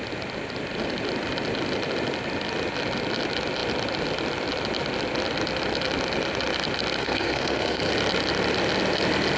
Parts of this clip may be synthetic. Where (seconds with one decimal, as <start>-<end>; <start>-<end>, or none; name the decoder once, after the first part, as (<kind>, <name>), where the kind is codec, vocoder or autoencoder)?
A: 7.0-7.9 (codec, SNAC)